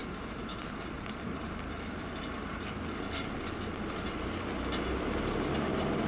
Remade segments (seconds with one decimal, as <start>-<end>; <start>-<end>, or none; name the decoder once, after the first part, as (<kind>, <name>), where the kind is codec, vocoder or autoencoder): none